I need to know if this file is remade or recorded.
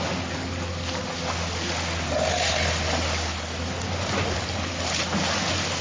recorded